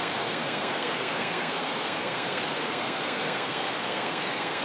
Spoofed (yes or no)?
yes